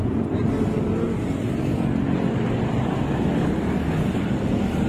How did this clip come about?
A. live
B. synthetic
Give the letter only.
A